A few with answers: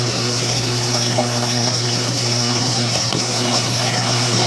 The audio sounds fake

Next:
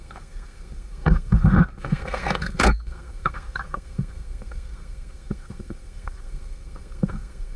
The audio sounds fake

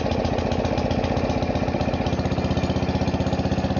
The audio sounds real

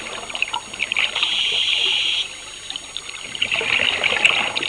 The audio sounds real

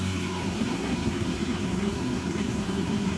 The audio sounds fake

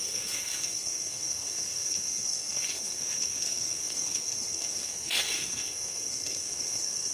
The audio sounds fake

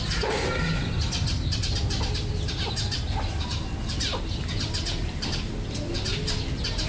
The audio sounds real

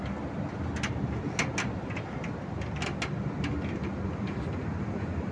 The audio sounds real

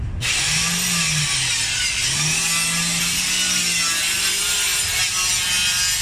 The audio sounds real